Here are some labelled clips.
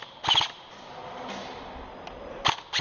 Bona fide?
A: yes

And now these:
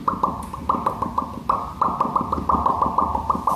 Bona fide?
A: yes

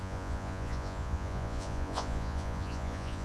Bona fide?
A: no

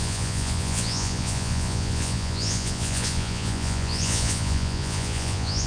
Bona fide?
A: no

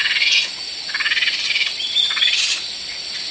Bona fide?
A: yes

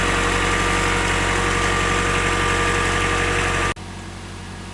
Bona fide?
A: yes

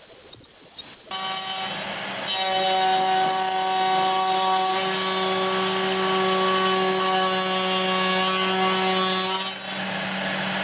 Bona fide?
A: yes